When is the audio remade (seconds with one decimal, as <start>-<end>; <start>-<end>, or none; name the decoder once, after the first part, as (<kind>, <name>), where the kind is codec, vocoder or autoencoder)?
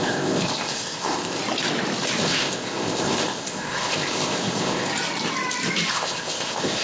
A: 0.0-1.4 (codec, ZipCodec); 2.2-4.9; 5.9-6.8